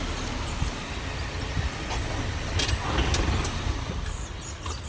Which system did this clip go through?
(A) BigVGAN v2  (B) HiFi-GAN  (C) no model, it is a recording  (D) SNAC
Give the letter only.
C